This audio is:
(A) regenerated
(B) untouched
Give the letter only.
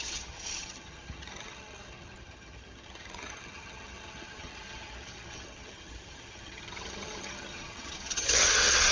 A